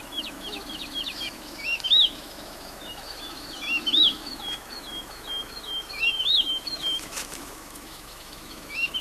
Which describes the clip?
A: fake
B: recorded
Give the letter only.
A